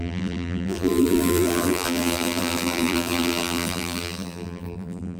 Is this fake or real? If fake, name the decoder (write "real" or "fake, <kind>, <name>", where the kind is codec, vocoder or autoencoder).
fake, vocoder, BigVGAN v2